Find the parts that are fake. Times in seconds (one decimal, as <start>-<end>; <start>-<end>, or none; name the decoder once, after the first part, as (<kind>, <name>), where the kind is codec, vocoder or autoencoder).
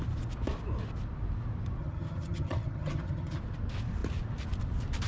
1.8-3.4 (vocoder, HiFi-GAN)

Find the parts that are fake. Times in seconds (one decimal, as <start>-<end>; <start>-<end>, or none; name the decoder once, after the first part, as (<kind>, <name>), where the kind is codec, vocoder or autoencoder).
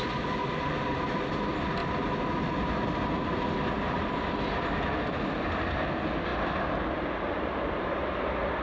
none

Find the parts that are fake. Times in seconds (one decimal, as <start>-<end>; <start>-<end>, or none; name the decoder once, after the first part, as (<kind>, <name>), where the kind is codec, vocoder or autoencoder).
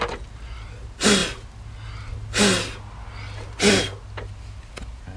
none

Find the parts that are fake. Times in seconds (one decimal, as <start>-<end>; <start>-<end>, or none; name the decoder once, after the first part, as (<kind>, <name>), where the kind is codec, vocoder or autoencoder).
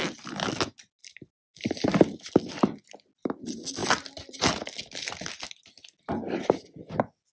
1.0-2.5 (vocoder, BigVGAN v2); 3.8-5.0